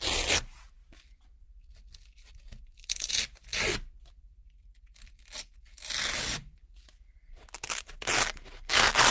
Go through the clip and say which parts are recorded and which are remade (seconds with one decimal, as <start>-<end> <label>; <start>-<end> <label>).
0.0-0.8 recorded; 0.8-3.1 remade; 3.1-3.5 recorded; 3.5-7.8 remade; 7.8-9.1 recorded